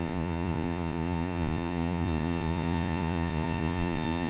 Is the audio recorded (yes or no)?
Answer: no